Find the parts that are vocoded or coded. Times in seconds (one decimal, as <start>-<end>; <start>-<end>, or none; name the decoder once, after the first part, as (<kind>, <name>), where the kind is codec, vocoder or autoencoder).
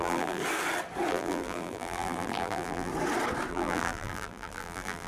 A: 0.0-0.4 (vocoder, BigVGAN v2); 1.1-2.9; 3.5-5.1